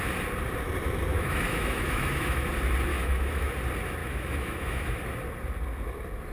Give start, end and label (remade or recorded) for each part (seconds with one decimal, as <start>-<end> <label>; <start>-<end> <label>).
0.0-1.1 recorded; 1.1-2.5 remade; 2.5-2.9 recorded; 2.9-3.5 remade; 3.5-4.0 recorded; 4.0-5.0 remade; 5.0-6.3 recorded